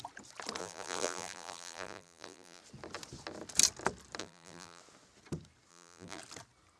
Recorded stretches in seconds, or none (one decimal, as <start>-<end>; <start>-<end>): 0.0-0.6; 2.6-4.2; 4.8-5.7; 6.2-6.8